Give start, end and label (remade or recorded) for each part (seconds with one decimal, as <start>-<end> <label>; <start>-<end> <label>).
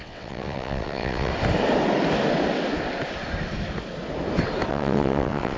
0.0-1.3 remade; 1.3-4.7 recorded; 4.7-5.6 remade